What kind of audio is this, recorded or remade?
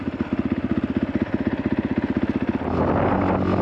recorded